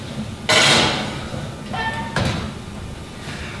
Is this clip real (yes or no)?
yes